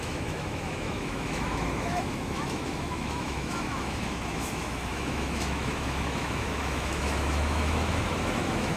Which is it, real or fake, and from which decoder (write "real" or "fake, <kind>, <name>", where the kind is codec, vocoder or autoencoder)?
fake, autoencoder, DAC-VAE